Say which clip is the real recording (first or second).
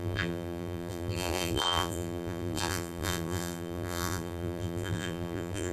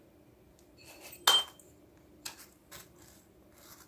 second